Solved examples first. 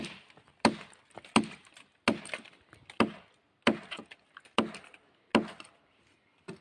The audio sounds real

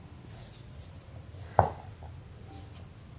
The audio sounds real